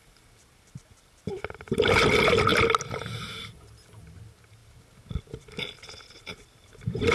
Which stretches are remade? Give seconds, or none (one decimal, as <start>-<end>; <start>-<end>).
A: none